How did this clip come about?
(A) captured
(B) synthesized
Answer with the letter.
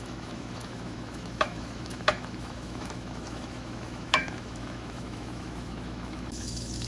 B